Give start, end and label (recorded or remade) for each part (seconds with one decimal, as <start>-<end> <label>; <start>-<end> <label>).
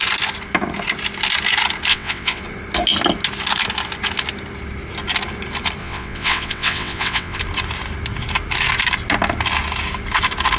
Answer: 0.0-1.9 recorded; 1.9-2.4 remade; 2.4-5.8 recorded; 5.8-7.4 remade; 7.4-10.6 recorded